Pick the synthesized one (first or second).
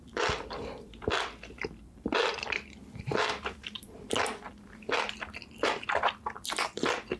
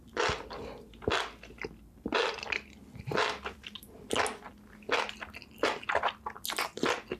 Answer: first